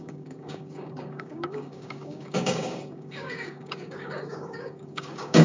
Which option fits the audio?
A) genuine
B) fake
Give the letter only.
B